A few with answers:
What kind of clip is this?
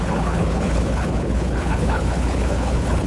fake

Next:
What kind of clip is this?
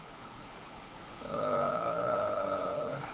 fake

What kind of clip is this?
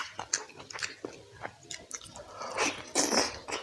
real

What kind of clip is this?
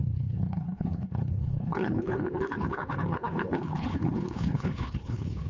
fake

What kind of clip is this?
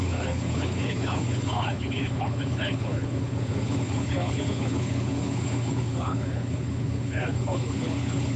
fake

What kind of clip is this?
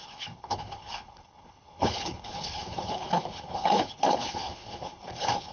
fake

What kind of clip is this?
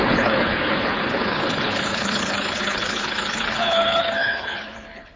fake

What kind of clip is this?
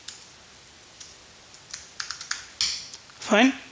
real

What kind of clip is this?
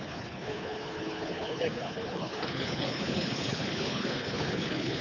fake